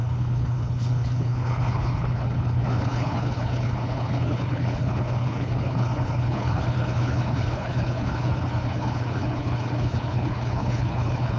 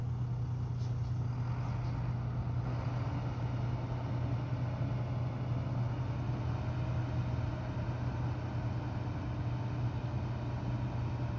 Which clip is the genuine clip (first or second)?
second